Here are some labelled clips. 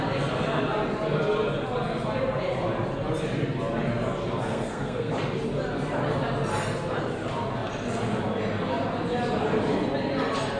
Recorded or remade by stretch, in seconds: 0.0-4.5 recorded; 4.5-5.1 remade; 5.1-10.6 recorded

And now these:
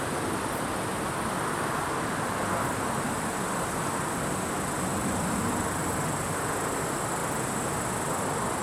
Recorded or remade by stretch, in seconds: 0.0-8.6 recorded

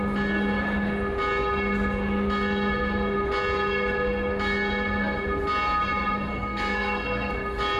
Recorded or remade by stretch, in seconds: 0.0-6.3 recorded; 6.3-7.3 remade; 7.3-7.8 recorded